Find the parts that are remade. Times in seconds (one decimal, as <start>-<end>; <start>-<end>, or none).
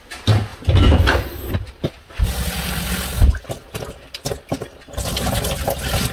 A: none